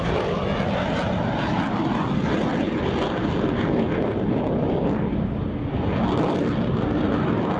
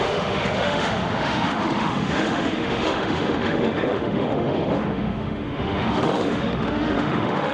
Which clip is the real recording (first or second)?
first